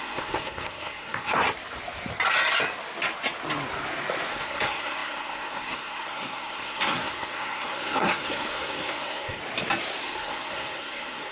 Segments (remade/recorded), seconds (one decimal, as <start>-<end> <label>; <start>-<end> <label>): 0.0-1.4 remade; 1.4-4.3 recorded; 4.3-9.4 remade; 9.4-10.0 recorded; 10.0-11.3 remade